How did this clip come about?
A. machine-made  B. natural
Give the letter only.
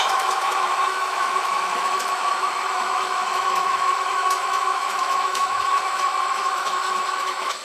A